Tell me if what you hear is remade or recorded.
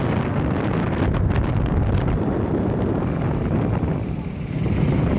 recorded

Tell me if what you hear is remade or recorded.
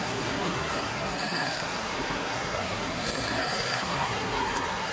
remade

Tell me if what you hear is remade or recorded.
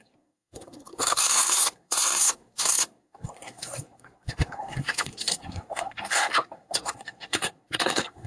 remade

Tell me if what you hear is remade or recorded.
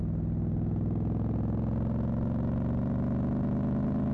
recorded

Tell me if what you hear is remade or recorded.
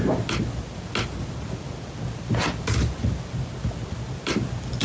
recorded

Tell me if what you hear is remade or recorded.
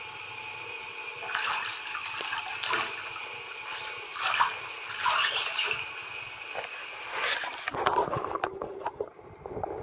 recorded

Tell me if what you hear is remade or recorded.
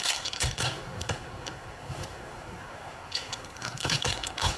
remade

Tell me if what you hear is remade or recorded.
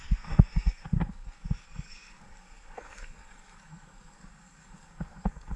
remade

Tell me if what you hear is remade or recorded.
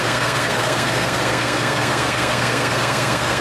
remade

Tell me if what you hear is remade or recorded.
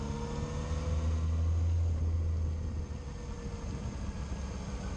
recorded